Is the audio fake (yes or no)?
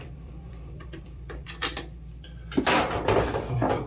yes